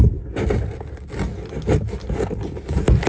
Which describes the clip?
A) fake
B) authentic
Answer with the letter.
B